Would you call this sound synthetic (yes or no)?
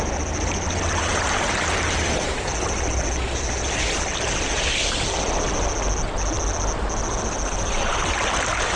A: no